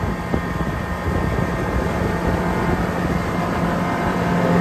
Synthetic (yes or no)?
no